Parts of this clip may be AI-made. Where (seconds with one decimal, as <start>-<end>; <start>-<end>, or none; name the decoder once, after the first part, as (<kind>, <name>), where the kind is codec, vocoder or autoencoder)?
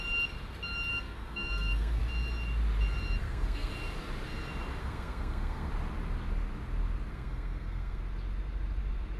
0.9-2.0 (codec, SNAC); 3.2-3.7; 4.8-5.7; 7.1-8.0